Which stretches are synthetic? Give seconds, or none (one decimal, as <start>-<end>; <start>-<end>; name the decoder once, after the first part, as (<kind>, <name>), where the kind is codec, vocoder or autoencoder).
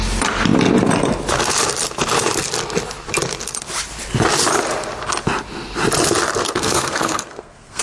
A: 6.4-7.8 (codec, SNAC)